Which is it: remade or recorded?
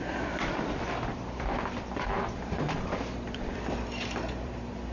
remade